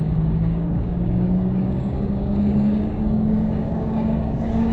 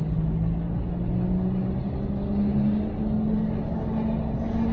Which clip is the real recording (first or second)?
second